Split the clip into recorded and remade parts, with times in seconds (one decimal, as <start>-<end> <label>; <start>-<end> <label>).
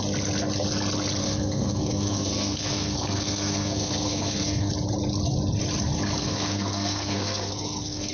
0.0-1.2 recorded; 1.2-4.7 remade; 4.7-6.2 recorded; 6.2-8.1 remade